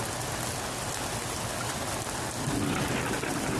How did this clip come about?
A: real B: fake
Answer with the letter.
A